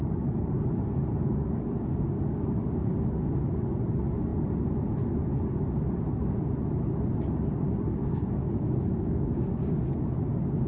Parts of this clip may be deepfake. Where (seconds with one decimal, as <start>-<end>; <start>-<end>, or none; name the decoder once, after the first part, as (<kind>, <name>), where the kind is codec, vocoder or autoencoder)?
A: 1.2-3.4 (codec, DAC); 8.0-10.0